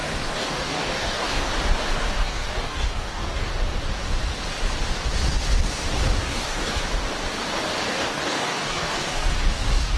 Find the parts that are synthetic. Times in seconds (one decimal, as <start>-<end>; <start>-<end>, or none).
0.0-1.5; 2.0-3.5; 6.2-6.8; 7.9-10.0